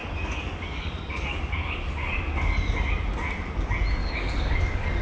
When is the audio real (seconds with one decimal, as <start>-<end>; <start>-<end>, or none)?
2.2-4.0